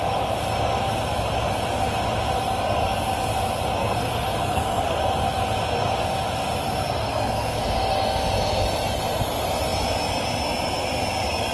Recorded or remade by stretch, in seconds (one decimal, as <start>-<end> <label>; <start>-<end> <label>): 0.0-3.8 recorded; 3.8-5.0 remade; 5.0-7.0 recorded; 7.0-7.6 remade; 7.6-11.5 recorded

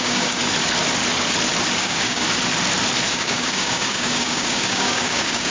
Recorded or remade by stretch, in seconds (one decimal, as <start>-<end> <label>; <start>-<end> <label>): 0.0-0.4 remade; 0.4-1.8 recorded; 1.8-2.2 remade; 2.2-3.1 recorded; 3.1-5.5 remade